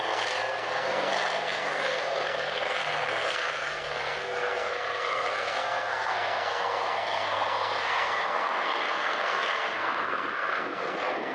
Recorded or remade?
remade